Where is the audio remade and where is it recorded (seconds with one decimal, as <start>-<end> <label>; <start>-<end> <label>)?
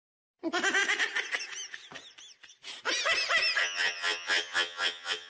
0.0-3.6 recorded; 3.6-5.3 remade